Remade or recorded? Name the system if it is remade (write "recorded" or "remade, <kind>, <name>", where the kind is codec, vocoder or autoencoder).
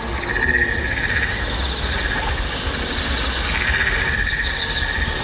recorded